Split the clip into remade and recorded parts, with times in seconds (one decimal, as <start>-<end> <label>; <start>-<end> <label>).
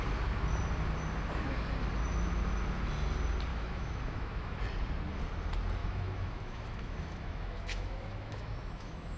0.0-3.5 recorded; 3.5-4.6 remade; 4.6-5.8 recorded; 5.8-9.2 remade